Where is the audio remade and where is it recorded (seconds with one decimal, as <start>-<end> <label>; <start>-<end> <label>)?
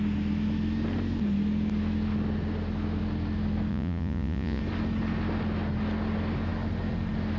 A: 0.0-3.7 recorded; 3.7-4.6 remade; 4.6-7.4 recorded